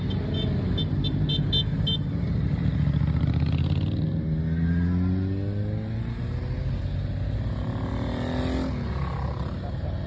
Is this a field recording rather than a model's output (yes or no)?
yes